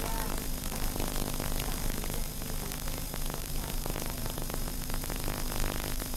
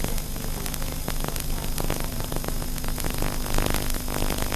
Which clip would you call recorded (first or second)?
second